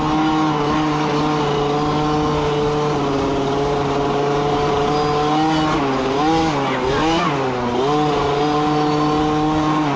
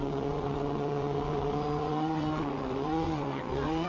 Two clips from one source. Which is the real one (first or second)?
first